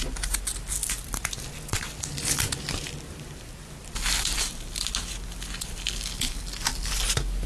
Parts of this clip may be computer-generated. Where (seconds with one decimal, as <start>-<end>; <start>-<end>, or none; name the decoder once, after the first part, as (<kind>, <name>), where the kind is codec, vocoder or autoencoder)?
none